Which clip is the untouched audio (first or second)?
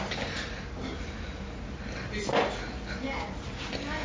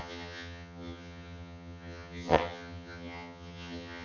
first